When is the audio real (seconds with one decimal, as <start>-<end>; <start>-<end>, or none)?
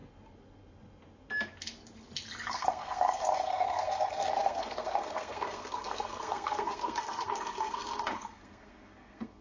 0.0-2.5